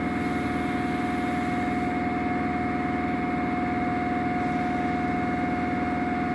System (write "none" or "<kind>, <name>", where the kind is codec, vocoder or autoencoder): none